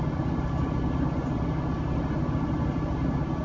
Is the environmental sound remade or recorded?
recorded